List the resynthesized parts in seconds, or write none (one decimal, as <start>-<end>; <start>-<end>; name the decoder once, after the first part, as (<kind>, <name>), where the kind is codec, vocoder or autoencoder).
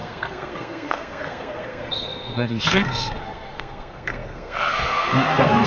0.0-5.7 (codec, SNAC)